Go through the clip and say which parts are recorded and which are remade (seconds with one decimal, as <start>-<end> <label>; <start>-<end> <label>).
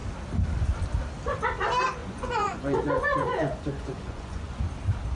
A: 0.0-2.0 recorded; 2.0-4.6 remade; 4.6-5.2 recorded